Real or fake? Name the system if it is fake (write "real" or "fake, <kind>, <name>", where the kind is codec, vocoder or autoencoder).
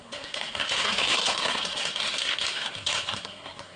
fake, codec, SNAC